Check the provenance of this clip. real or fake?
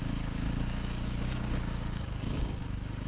fake